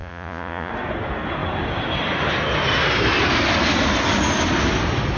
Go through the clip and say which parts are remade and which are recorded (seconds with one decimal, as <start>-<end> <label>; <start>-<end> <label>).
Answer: 0.0-0.7 remade; 0.7-5.2 recorded